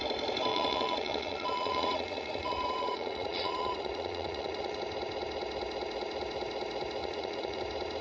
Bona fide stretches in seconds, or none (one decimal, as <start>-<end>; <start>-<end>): 0.0-0.5; 4.8-7.0; 7.6-8.0